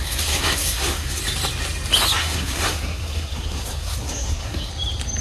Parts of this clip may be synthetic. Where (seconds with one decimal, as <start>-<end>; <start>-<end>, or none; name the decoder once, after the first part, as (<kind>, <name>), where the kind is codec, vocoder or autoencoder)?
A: 0.0-1.2 (codec, SNAC); 2.2-4.7